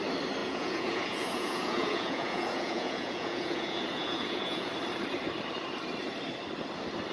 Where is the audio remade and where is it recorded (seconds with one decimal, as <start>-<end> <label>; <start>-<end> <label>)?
0.0-0.4 recorded; 0.4-4.7 remade; 4.7-7.1 recorded